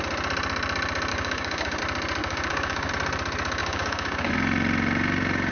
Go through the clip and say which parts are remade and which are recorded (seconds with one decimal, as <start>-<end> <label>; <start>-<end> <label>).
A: 0.0-1.1 recorded; 1.1-1.8 remade; 1.8-2.2 recorded; 2.2-2.9 remade; 2.9-3.6 recorded; 3.6-4.3 remade; 4.3-5.5 recorded

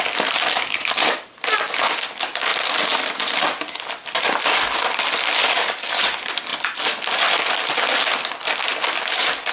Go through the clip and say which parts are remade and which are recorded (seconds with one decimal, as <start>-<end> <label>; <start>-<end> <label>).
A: 0.0-5.4 recorded; 5.4-6.0 remade; 6.0-9.5 recorded

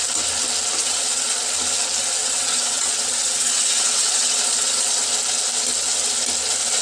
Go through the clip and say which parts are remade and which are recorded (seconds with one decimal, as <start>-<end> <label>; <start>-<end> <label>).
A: 0.0-0.8 recorded; 0.8-1.4 remade; 1.4-2.2 recorded; 2.2-5.0 remade; 5.0-6.8 recorded

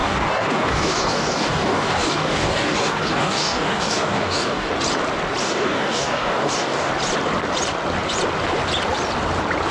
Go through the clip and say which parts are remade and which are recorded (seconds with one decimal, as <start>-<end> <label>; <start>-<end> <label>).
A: 0.0-4.7 remade; 4.7-5.4 recorded; 5.4-6.9 remade; 6.9-9.7 recorded

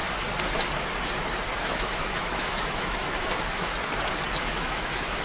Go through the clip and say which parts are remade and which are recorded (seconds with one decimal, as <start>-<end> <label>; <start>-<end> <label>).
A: 0.0-1.6 recorded; 1.6-3.7 remade; 3.7-4.4 recorded; 4.4-5.2 remade

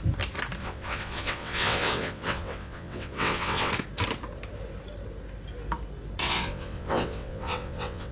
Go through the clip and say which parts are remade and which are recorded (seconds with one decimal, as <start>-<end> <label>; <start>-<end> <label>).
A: 0.0-0.6 recorded; 0.6-3.7 remade; 3.7-6.2 recorded; 6.2-8.1 remade